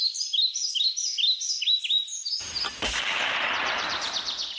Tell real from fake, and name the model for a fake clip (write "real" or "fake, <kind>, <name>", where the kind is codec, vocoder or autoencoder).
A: real